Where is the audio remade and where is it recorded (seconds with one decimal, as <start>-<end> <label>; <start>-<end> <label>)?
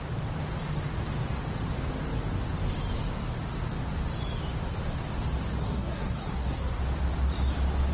0.0-5.6 recorded; 5.6-6.8 remade; 6.8-7.9 recorded